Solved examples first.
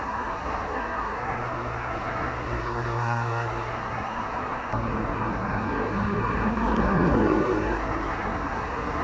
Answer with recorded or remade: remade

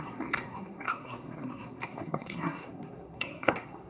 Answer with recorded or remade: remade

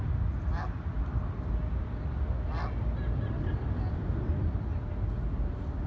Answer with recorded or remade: recorded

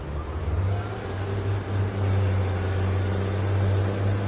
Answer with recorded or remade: recorded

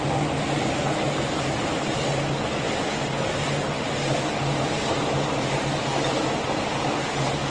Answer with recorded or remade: recorded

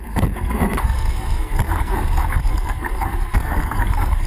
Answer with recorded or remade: remade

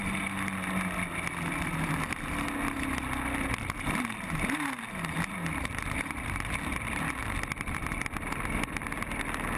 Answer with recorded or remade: recorded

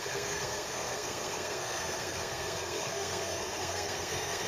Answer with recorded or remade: remade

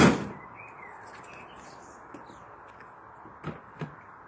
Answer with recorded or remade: recorded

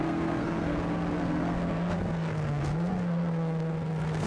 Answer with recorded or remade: remade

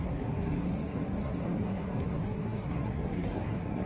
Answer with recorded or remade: remade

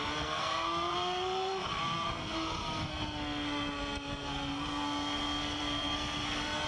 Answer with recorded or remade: remade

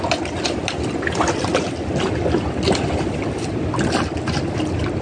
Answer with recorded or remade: recorded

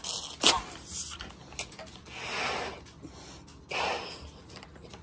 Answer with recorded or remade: recorded